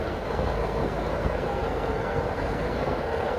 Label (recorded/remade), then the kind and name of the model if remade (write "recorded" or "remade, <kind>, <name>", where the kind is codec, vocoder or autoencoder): remade, codec, SNAC